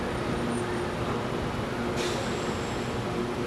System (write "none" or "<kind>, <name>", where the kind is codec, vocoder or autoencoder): none